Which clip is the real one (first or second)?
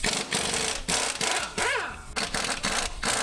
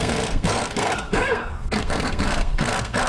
first